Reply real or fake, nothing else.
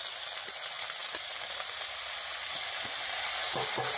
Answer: real